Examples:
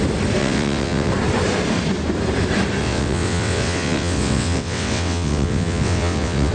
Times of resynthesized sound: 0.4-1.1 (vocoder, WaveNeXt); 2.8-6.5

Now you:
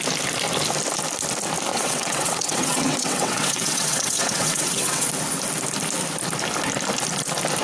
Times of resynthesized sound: 1.7-5.1 (vocoder, WaveNeXt)